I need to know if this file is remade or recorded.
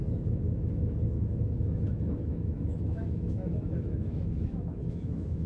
remade